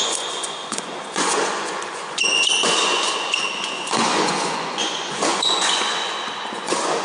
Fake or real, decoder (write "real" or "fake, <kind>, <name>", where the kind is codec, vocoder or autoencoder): fake, vocoder, Vocos